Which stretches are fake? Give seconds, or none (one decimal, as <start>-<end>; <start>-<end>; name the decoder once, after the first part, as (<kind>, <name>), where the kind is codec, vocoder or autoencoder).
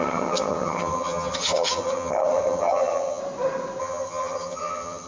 0.0-3.2 (vocoder, HiFi-GAN); 3.8-5.1